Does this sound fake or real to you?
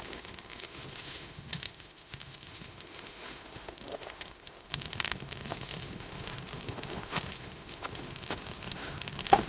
fake